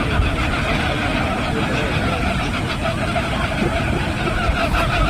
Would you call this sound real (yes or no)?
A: yes